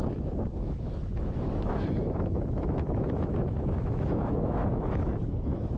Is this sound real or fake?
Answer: fake